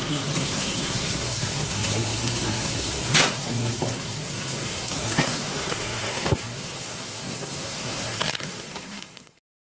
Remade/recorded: remade